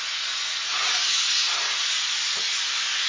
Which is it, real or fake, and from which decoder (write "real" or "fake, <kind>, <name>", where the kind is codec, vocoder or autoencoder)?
real